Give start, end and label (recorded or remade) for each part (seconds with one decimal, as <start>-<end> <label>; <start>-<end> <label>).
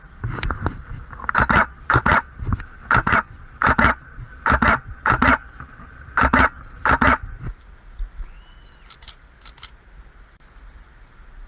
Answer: 0.0-11.5 recorded